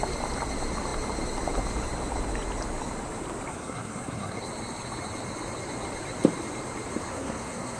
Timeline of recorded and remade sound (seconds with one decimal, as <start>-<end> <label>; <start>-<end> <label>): 0.0-3.5 recorded; 3.5-4.5 remade; 4.5-7.1 recorded; 7.1-7.8 remade